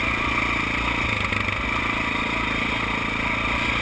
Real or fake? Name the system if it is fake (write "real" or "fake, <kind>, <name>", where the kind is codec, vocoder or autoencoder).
real